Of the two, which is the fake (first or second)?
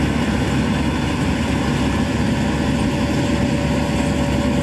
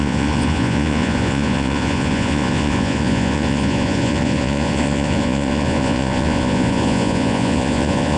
second